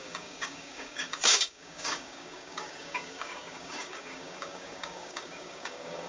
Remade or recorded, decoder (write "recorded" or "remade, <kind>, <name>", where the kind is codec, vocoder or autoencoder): remade, codec, DAC